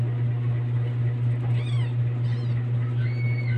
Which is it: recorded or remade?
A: recorded